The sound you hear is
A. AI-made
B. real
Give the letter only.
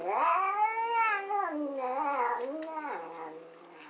B